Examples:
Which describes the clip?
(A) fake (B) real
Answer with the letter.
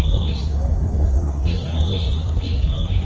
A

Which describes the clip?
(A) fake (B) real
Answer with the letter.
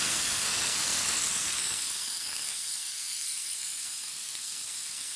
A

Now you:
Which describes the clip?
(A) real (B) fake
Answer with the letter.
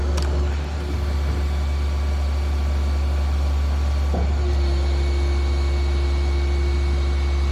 A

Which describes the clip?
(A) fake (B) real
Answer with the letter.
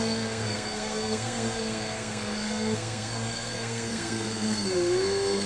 A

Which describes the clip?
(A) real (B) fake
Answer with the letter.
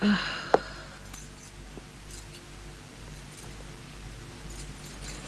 A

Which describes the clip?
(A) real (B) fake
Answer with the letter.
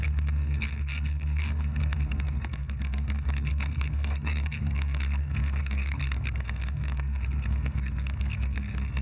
B